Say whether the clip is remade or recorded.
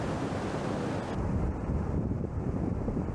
recorded